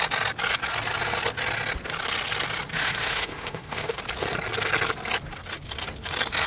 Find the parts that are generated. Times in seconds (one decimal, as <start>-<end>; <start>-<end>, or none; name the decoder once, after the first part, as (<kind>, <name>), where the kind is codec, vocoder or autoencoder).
2.7-4.0 (autoencoder, DAC-VAE)